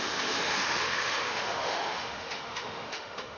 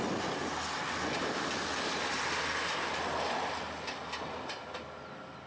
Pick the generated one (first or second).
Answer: first